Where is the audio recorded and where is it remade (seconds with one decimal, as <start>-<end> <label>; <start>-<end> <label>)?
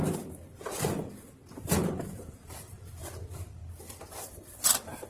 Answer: 0.0-5.1 remade